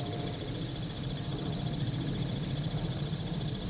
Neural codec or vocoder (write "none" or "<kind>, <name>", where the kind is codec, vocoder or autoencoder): none